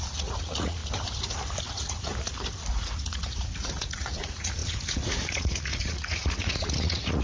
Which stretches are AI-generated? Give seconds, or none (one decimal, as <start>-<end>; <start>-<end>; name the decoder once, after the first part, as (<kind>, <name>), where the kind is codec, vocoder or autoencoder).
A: 0.0-0.8 (vocoder, Vocos); 1.6-2.1; 2.7-7.2